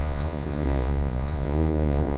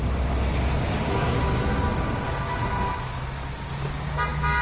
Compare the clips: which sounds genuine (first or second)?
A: second